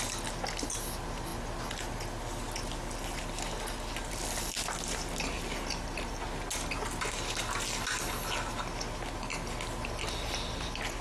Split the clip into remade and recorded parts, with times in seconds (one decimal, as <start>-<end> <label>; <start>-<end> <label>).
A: 0.0-11.0 recorded